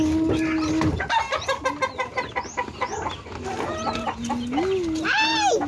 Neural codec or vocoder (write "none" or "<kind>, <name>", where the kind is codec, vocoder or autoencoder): none